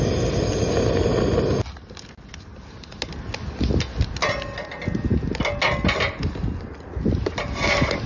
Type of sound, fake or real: real